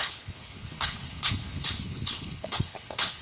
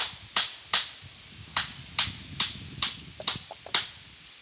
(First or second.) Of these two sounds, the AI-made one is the first